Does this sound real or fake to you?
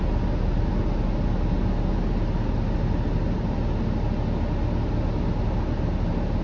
real